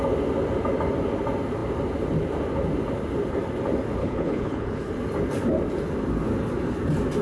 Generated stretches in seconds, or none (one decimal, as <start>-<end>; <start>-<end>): 4.0-4.9